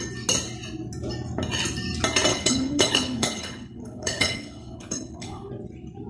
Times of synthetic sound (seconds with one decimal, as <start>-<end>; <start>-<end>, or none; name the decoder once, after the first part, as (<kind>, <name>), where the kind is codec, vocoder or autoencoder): 2.3-5.5 (codec, HILCodec)